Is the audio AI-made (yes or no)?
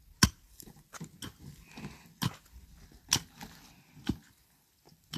no